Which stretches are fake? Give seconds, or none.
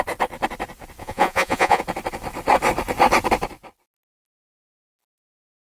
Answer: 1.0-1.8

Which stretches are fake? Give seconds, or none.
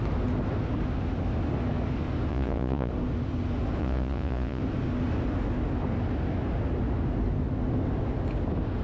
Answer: 2.3-2.9; 3.8-4.6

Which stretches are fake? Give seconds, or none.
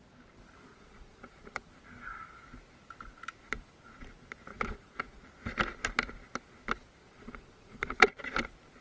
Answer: 0.7-1.7; 4.5-5.2; 7.0-8.1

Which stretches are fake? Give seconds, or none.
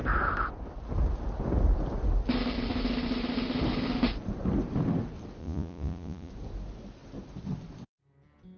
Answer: 5.4-6.3